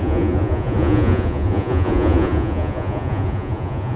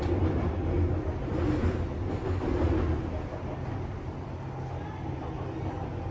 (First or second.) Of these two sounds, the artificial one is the first